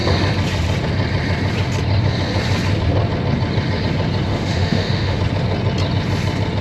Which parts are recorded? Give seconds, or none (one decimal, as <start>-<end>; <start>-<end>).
0.0-4.3; 5.2-6.6